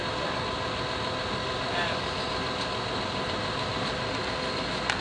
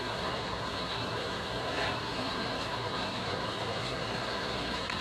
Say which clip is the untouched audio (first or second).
first